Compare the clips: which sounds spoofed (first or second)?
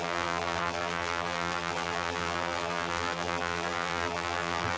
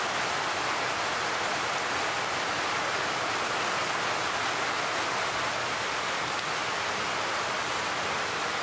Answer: first